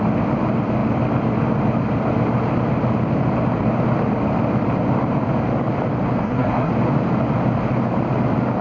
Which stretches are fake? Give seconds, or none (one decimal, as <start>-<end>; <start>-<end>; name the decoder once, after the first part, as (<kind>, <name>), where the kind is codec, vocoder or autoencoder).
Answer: 6.2-6.7 (codec, SNAC)